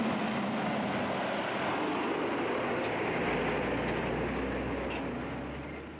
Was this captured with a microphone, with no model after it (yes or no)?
yes